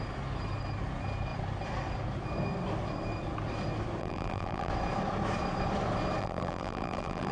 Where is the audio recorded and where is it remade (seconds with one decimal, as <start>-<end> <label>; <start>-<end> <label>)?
0.0-4.0 recorded; 4.0-4.7 remade; 4.7-6.2 recorded; 6.2-7.3 remade